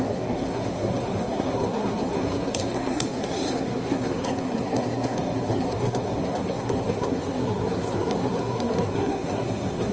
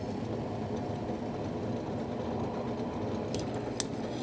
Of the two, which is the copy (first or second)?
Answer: first